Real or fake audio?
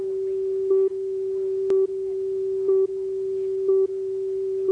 real